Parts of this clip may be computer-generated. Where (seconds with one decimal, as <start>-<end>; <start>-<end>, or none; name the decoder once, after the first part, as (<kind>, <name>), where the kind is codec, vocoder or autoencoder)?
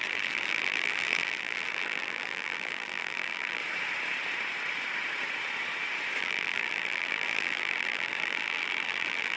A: 0.0-3.6 (vocoder, BigVGAN v2); 6.2-9.4